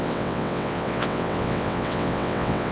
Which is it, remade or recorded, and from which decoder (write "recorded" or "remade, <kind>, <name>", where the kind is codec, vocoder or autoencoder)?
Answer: remade, vocoder, WaveNeXt